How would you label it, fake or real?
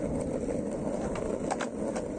real